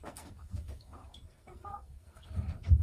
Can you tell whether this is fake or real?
fake